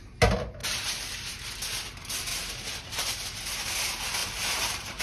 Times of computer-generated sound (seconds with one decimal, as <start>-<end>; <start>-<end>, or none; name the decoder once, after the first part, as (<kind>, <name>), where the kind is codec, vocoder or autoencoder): 0.6-1.4 (vocoder, BigVGAN v2); 2.3-3.0; 4.2-5.0